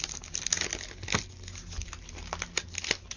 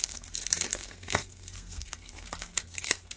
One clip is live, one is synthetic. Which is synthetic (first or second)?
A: second